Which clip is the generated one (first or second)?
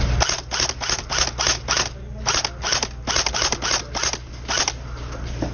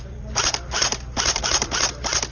second